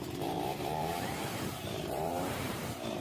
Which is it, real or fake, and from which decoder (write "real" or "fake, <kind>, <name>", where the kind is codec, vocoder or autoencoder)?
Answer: fake, vocoder, BigVGAN v2